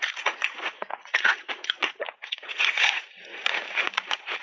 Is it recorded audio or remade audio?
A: remade